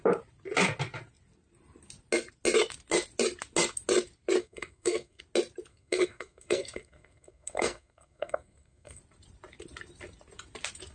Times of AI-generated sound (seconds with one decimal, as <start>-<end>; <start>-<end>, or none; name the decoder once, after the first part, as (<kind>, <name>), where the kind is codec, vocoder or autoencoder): 4.4-5.2 (codec, SNAC); 5.7-9.0